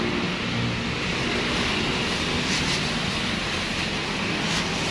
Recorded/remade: recorded